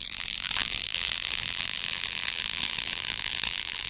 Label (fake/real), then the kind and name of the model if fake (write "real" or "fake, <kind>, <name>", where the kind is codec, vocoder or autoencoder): fake, vocoder, BigVGAN v2